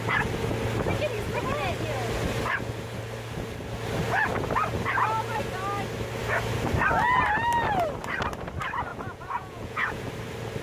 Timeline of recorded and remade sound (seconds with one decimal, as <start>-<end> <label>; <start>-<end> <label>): 0.0-8.9 recorded; 8.9-10.1 remade; 10.1-10.6 recorded